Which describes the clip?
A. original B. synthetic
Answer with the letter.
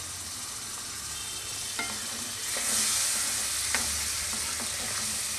A